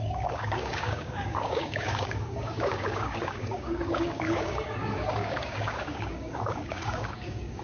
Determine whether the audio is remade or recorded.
remade